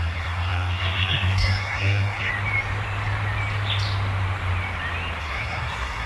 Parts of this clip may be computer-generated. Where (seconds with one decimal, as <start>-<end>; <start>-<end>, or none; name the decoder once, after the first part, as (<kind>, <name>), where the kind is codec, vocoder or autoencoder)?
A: 0.0-2.3 (codec, SNAC); 5.2-6.1